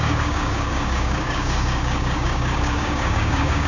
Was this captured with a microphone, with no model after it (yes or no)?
no